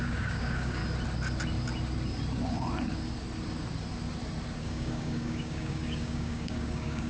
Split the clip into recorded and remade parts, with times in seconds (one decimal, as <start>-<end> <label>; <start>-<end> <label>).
0.0-0.8 remade; 0.8-4.6 recorded; 4.6-7.1 remade